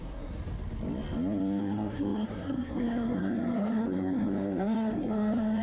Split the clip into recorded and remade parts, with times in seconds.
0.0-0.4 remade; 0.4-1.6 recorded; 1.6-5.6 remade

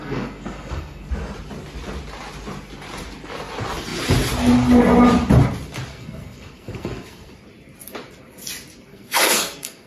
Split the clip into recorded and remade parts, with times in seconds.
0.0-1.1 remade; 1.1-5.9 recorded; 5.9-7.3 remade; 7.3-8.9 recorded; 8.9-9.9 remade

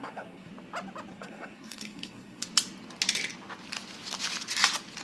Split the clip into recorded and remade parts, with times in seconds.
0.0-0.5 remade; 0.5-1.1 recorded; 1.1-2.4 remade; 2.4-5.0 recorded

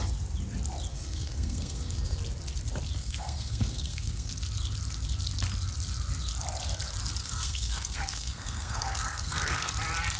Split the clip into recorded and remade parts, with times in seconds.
0.0-0.9 recorded; 0.9-2.2 remade; 2.2-3.0 recorded; 3.0-4.3 remade; 4.3-7.2 recorded; 7.2-9.7 remade; 9.7-10.2 recorded

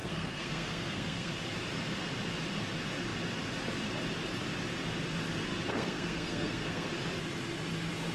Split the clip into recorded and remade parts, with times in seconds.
0.0-1.3 remade; 1.3-5.7 recorded; 5.7-6.9 remade; 6.9-8.1 recorded